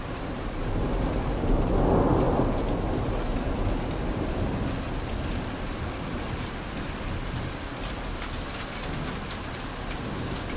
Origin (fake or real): real